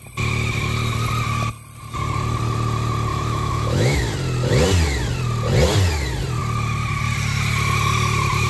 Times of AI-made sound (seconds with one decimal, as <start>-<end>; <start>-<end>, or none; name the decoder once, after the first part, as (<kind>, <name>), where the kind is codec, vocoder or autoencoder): 3.1-4.0 (autoencoder, DAC-VAE)